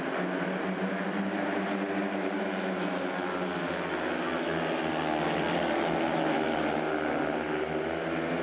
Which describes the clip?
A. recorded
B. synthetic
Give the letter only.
A